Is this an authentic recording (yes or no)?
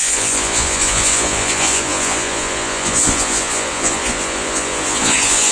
no